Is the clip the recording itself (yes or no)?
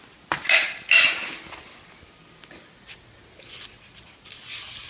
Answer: yes